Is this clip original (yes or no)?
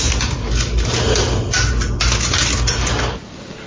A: yes